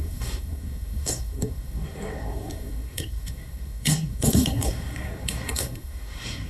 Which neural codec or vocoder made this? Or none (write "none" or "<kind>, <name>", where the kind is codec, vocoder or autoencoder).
codec, SNAC